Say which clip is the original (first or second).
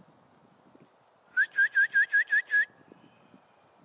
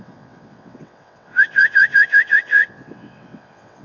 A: first